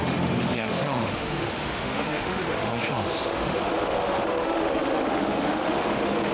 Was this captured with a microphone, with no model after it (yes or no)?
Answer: no